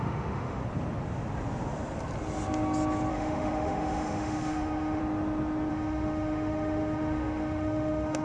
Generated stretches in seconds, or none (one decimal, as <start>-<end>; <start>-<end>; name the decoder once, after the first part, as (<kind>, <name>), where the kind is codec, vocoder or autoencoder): 0.0-0.6 (autoencoder, DAC-VAE); 3.1-5.0; 5.7-8.2